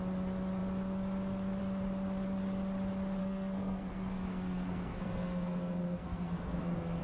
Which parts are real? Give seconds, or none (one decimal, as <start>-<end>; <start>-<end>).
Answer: 0.0-3.2